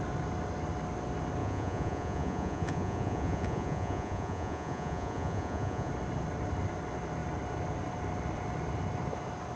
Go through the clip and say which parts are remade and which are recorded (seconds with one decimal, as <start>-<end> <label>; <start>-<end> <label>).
0.0-1.4 recorded; 1.4-5.9 remade; 5.9-9.6 recorded